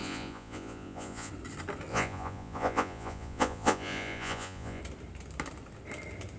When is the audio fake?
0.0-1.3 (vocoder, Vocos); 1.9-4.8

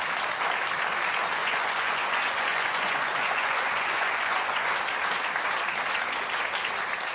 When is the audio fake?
1.4-4.7 (vocoder, Vocos)

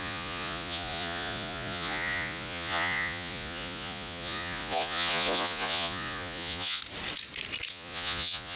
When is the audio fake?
0.0-6.8 (vocoder, Vocos); 7.7-8.6

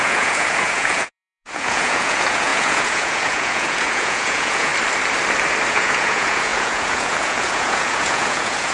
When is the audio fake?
0.0-4.7 (vocoder, Vocos); 5.7-8.7

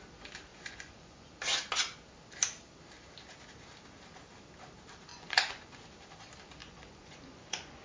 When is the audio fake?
0.5-1.3 (vocoder, Vocos); 5.1-5.7; 6.6-7.8

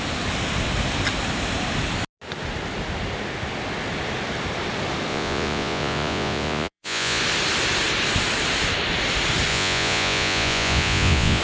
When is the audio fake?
5.1-7.2 (vocoder, Vocos); 9.5-11.4